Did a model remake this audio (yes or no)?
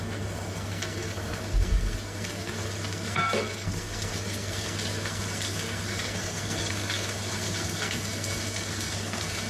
yes